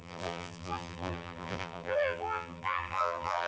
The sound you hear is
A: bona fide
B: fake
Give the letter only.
B